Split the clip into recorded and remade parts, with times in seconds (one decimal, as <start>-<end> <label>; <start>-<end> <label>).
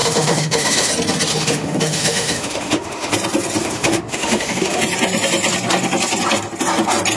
0.0-0.9 remade; 0.9-1.3 recorded; 1.3-3.1 remade; 3.1-3.6 recorded; 3.6-4.8 remade; 4.8-7.2 recorded